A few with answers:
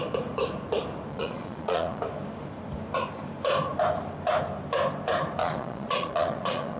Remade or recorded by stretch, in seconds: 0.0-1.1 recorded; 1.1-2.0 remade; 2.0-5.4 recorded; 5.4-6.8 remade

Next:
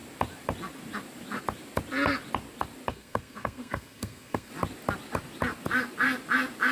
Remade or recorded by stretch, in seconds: 0.0-2.9 recorded; 2.9-4.5 remade; 4.5-6.7 recorded

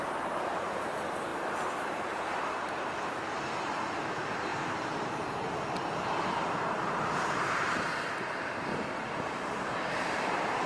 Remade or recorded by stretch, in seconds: 0.0-8.7 remade; 8.7-9.5 recorded; 9.5-10.7 remade